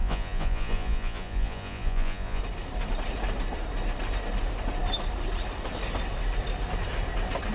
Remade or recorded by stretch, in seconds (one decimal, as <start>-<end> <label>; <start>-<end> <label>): 0.0-2.4 remade; 2.4-7.5 recorded